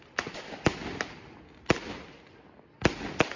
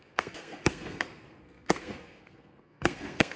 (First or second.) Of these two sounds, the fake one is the second